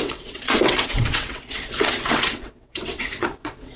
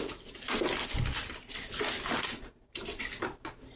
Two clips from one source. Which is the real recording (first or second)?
second